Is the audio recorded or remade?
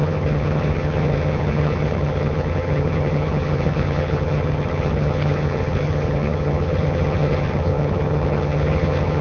remade